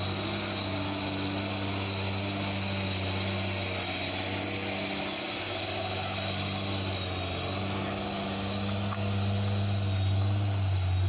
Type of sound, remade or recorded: recorded